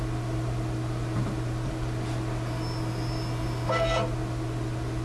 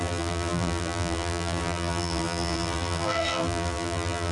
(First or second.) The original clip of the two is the first